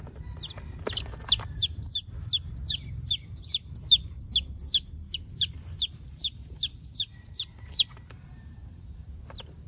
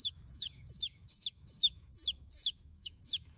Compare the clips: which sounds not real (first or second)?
second